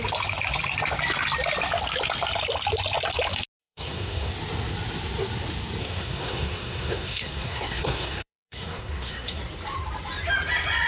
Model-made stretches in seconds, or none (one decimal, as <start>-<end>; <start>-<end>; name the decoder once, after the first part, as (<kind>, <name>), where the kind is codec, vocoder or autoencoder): 3.6-4.3 (codec, SNAC); 5.8-9.4